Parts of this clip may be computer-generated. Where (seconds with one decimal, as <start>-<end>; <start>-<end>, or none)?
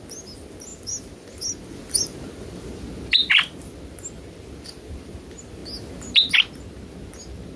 none